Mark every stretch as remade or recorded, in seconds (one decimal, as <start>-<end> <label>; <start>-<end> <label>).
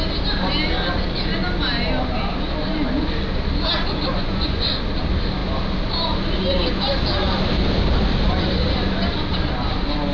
0.0-4.1 recorded; 4.1-4.7 remade; 4.7-10.1 recorded